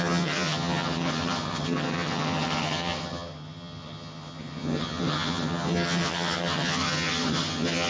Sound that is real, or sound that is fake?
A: fake